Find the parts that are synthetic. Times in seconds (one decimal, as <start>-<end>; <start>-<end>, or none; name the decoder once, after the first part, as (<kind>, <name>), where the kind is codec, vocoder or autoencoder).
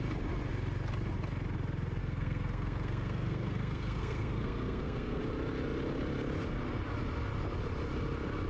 2.0-5.2 (codec, SNAC)